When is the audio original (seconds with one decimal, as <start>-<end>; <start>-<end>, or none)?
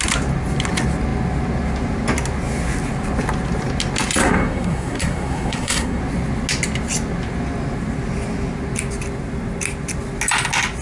0.0-4.2; 6.0-10.8